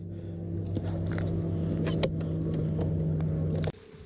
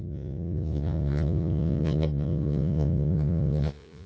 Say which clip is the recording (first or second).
first